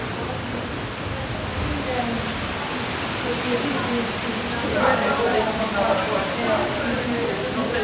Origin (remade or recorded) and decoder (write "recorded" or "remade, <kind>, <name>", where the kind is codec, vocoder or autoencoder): recorded